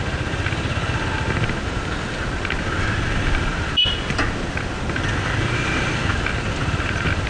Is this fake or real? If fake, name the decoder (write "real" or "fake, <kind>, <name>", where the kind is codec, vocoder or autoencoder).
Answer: real